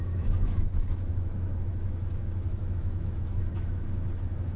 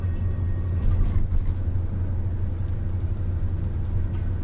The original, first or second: second